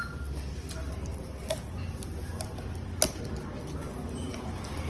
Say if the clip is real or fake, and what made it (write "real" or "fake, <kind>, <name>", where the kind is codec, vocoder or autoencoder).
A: real